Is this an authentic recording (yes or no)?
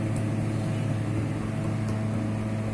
yes